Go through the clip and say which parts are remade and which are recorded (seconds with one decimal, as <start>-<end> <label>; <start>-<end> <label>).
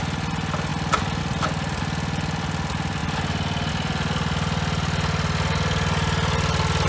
0.0-6.9 recorded